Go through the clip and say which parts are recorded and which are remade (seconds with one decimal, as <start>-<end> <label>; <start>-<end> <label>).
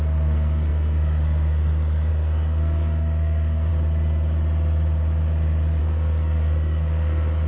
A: 0.0-3.7 remade; 3.7-5.8 recorded; 5.8-7.5 remade